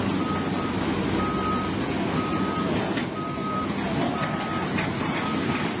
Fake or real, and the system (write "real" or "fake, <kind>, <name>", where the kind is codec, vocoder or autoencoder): real